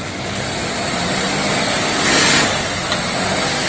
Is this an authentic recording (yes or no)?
yes